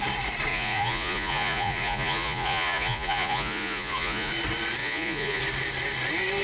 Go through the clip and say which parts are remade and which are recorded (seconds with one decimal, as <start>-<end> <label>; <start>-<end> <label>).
0.0-0.5 recorded; 0.5-4.3 remade; 4.3-4.8 recorded; 4.8-5.4 remade; 5.4-6.4 recorded